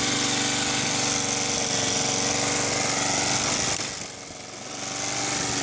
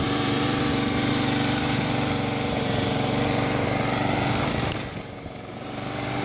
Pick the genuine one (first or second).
first